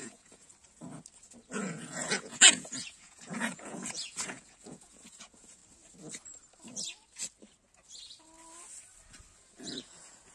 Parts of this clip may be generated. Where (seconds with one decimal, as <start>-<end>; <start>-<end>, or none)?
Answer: 0.0-0.5; 1.5-5.6; 9.4-10.3